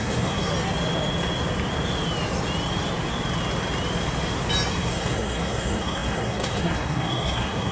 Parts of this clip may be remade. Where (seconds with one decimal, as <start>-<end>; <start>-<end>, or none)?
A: 0.0-0.5; 4.7-7.7